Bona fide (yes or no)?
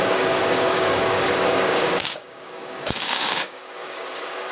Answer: no